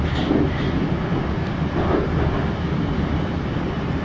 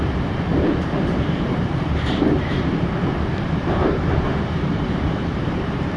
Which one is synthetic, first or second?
second